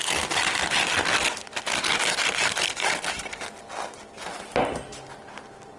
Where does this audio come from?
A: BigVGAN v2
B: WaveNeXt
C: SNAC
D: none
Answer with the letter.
D